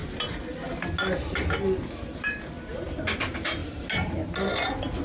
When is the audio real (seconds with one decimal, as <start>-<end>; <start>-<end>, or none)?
0.0-5.0